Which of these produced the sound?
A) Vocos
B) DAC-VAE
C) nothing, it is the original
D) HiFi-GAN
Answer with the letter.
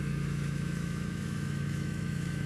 B